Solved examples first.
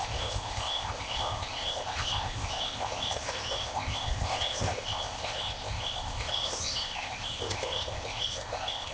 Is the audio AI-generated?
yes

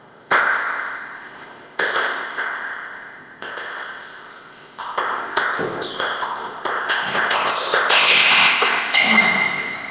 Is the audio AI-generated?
yes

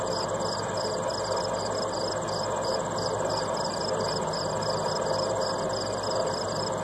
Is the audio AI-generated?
no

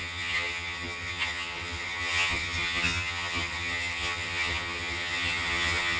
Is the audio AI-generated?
yes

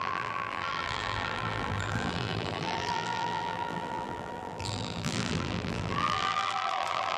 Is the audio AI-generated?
yes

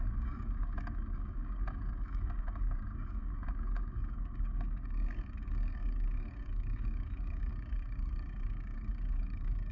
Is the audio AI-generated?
yes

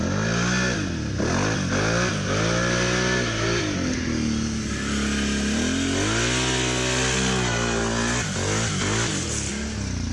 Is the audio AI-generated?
no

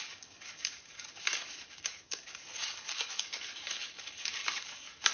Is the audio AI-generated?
yes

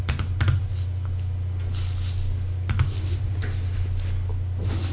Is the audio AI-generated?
no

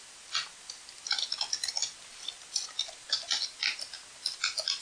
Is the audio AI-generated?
no